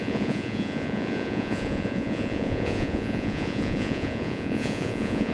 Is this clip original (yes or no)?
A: no